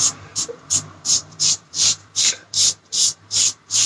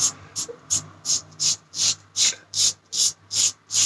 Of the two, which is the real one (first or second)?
second